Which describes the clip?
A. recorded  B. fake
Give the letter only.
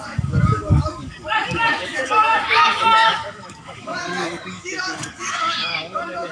B